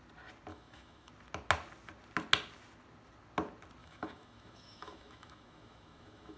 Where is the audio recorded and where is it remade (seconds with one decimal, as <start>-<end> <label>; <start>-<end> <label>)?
0.0-0.5 recorded; 0.5-1.1 remade; 1.1-3.8 recorded; 3.8-6.4 remade